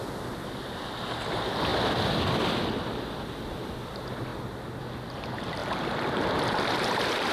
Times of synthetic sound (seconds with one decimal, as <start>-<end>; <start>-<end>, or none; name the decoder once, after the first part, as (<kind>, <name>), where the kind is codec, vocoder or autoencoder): none